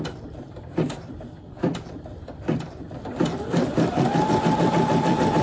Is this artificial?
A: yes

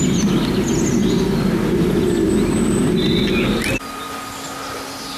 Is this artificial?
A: no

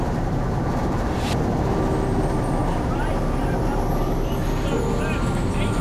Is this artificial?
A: yes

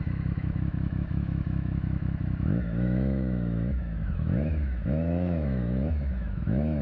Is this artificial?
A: yes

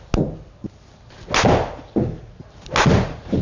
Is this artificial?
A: no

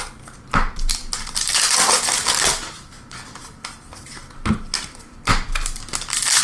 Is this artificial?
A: no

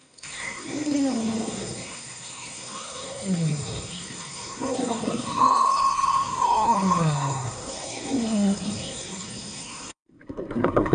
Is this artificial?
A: yes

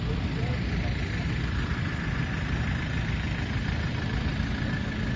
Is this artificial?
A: no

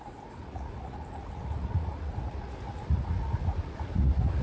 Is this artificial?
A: yes